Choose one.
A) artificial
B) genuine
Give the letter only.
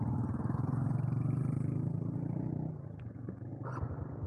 B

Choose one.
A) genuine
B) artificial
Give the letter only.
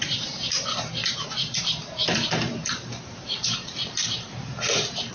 B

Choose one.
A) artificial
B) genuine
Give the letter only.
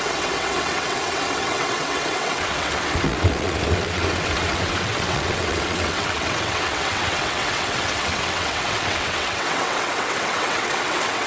A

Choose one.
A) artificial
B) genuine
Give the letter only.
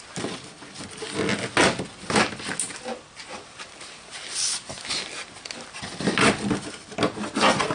B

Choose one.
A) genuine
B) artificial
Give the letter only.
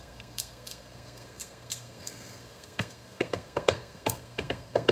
B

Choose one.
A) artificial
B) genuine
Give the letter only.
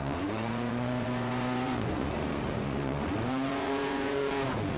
A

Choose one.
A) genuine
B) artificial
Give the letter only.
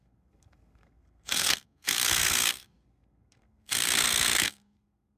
B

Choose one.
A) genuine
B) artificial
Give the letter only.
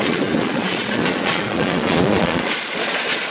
B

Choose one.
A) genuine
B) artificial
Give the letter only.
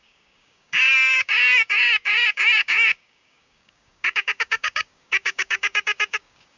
B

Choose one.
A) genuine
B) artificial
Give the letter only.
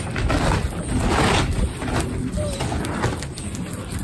A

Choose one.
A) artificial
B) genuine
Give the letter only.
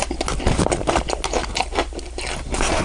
B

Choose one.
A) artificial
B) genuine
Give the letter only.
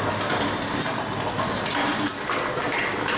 B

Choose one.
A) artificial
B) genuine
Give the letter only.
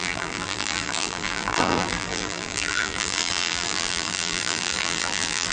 A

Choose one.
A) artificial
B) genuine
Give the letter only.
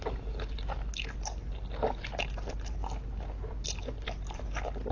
B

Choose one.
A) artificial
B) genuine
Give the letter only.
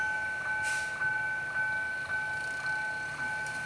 B